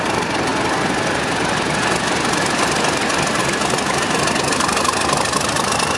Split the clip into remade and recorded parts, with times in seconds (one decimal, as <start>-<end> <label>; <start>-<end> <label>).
0.0-0.5 remade; 0.5-2.0 recorded; 2.0-6.0 remade